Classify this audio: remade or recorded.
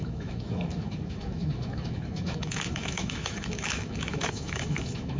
remade